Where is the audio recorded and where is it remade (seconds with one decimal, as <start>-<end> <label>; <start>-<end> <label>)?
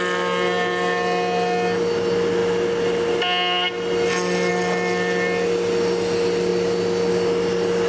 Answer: 0.0-7.9 recorded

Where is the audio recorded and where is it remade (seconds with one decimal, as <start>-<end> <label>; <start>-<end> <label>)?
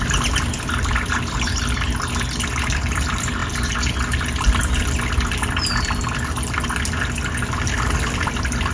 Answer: 0.0-8.7 recorded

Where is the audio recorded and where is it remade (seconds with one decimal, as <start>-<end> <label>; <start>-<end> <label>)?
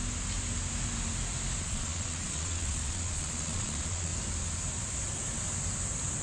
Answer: 0.0-1.6 recorded; 1.6-4.1 remade; 4.1-6.2 recorded